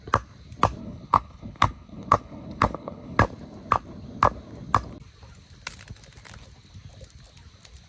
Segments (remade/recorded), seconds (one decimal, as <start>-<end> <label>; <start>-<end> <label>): 0.0-0.8 recorded; 0.8-3.2 remade; 3.2-7.9 recorded